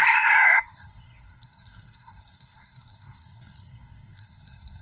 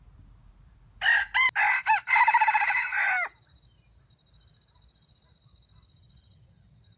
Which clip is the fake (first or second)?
first